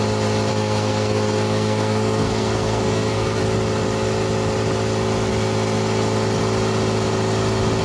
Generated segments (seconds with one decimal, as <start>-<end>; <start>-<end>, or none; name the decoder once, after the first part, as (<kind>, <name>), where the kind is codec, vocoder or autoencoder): 0.5-3.4 (codec, SNAC)